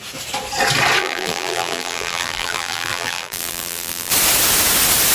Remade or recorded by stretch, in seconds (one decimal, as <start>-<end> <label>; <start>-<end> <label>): 0.0-1.0 recorded; 1.0-4.1 remade; 4.1-5.1 recorded